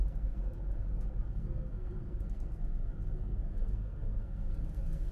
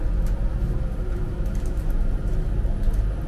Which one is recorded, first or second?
second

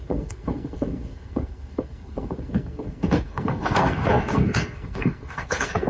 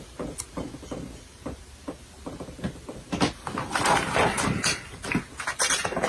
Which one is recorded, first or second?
second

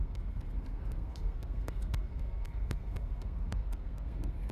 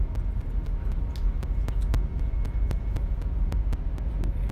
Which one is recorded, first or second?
second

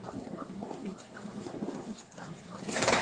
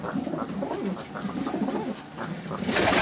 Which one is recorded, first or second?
second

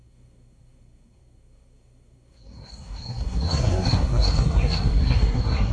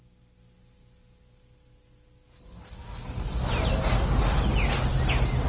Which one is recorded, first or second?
second